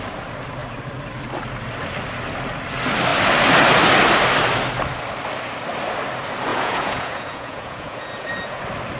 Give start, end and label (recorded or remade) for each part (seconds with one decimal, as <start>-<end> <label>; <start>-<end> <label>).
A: 0.0-6.5 recorded; 6.5-8.6 remade; 8.6-9.0 recorded